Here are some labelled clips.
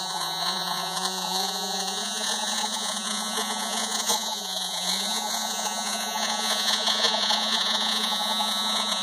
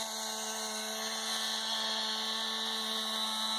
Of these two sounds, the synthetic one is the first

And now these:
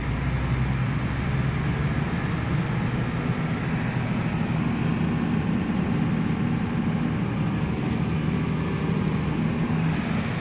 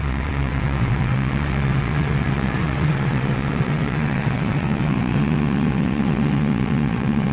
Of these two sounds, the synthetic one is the second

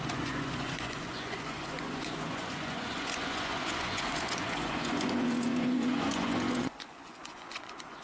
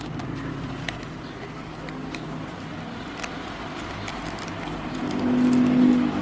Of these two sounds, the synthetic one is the first